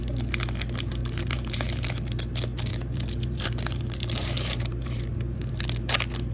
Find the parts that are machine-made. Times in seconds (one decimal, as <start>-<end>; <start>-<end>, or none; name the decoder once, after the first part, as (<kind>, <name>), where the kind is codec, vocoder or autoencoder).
1.0-1.9 (vocoder, BigVGAN v2); 2.7-5.5